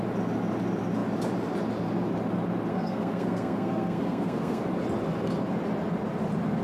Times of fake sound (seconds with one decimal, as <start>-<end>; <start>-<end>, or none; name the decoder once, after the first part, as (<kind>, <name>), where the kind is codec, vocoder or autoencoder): 2.7-4.6 (codec, SNAC)